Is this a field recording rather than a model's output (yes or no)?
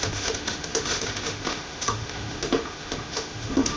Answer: no